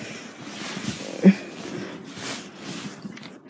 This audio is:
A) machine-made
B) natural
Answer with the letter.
B